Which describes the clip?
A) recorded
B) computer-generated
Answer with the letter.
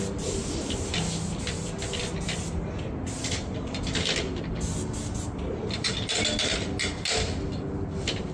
A